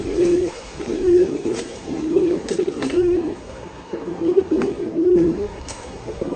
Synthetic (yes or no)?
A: yes